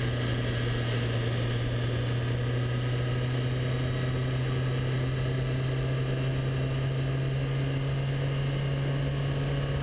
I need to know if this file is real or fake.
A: real